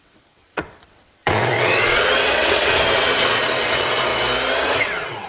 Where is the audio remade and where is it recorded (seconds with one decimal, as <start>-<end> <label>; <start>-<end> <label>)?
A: 0.0-4.1 remade; 4.1-4.6 recorded; 4.6-5.3 remade